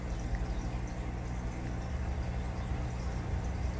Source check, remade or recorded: recorded